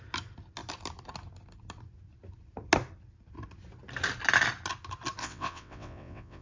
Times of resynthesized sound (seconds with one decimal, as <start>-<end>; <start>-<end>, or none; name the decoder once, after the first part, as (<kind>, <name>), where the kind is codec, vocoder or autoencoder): 5.2-6.4 (vocoder, WaveNeXt)